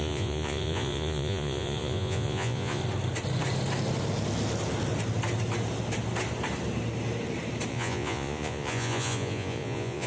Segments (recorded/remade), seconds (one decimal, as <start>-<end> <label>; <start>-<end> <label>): 0.0-2.8 remade; 2.8-7.7 recorded; 7.7-10.1 remade